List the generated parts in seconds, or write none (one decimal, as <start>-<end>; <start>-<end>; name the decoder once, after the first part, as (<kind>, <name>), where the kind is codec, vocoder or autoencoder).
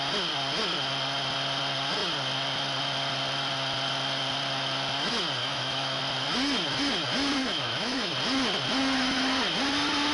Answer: 5.4-6.0 (autoencoder, DAC-VAE); 7.4-8.1